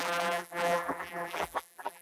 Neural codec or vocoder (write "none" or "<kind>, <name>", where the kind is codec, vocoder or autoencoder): vocoder, BigVGAN v2